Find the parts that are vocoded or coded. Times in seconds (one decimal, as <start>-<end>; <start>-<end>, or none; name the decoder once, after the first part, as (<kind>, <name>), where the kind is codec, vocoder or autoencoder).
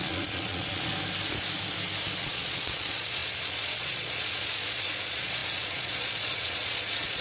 0.0-0.9 (vocoder, Vocos); 2.2-7.2